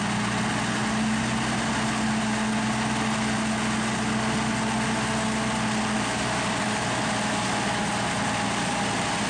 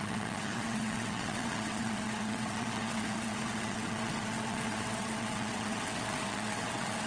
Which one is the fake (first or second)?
second